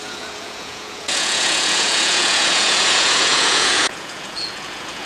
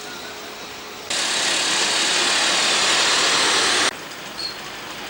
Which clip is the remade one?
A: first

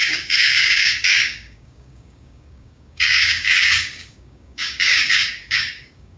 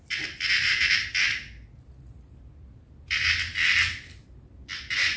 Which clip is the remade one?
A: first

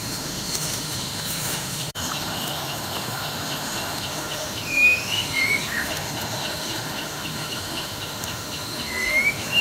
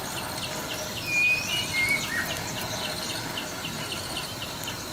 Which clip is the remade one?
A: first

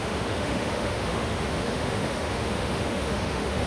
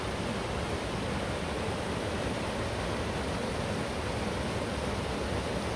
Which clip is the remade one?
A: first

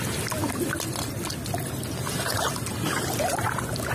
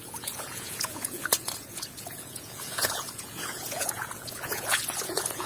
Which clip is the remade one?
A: second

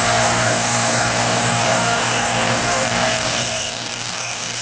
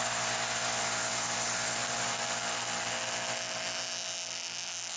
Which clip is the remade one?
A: first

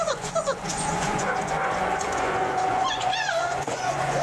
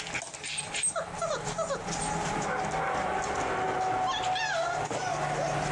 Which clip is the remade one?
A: first